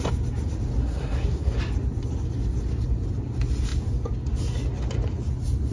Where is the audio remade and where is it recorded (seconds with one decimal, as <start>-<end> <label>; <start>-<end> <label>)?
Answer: 0.0-0.8 recorded; 0.8-1.6 remade; 1.6-5.7 recorded